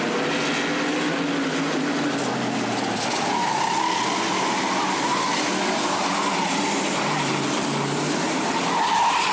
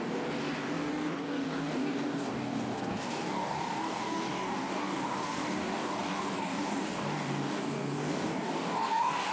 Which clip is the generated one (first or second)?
second